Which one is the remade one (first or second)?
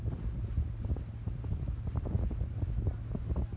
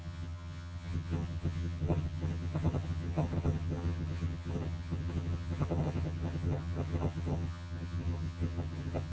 second